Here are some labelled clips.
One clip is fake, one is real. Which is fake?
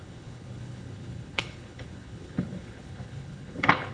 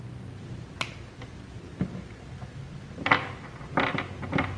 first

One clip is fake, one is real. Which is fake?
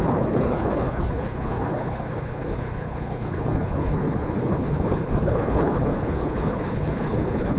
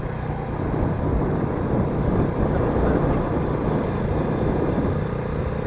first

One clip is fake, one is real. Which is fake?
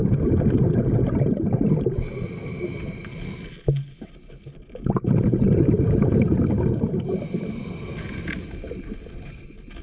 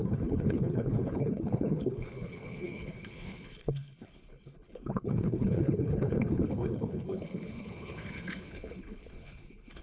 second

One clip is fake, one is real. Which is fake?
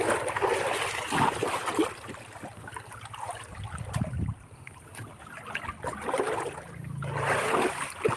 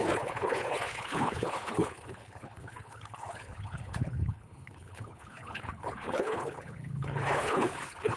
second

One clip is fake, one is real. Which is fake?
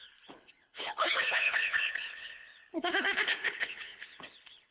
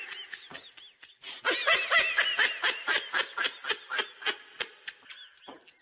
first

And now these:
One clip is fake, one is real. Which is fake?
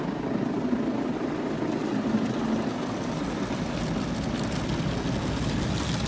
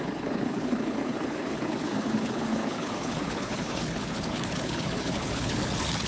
second